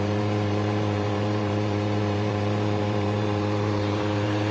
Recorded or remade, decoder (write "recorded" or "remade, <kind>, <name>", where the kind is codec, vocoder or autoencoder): remade, vocoder, BigVGAN v2